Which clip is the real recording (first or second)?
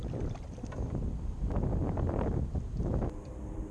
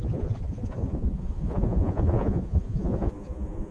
first